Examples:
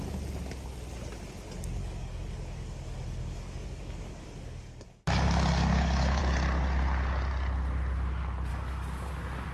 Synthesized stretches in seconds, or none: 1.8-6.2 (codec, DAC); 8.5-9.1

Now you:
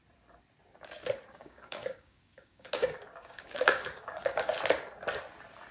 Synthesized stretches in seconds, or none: 1.3-4.6 (codec, DAC)

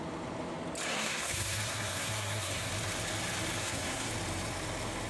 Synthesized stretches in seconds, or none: 0.9-2.7 (codec, SNAC); 3.6-4.1

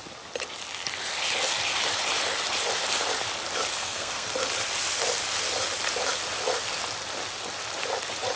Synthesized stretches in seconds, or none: 3.8-4.3 (codec, SNAC)

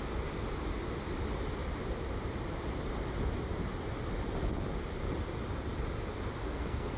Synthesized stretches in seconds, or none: 6.4-7.0 (codec, SNAC)